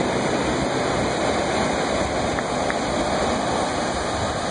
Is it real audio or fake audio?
real